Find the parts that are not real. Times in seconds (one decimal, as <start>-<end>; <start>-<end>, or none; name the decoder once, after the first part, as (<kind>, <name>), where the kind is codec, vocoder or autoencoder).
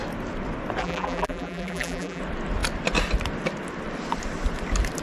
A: 0.8-2.2 (vocoder, BigVGAN v2)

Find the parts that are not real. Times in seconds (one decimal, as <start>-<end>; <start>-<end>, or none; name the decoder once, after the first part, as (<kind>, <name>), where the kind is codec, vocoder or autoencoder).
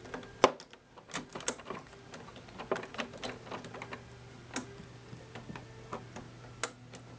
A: 1.3-1.9 (vocoder, BigVGAN v2)